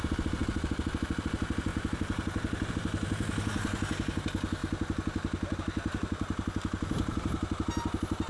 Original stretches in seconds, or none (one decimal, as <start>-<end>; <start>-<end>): 0.0-1.7; 2.7-8.3